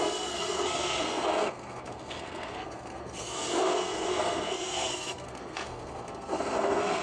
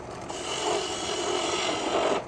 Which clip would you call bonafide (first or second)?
second